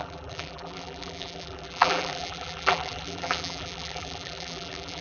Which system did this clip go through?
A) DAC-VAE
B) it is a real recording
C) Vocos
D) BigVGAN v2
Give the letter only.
D